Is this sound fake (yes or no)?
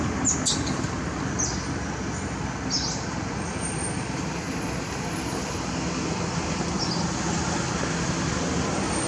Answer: no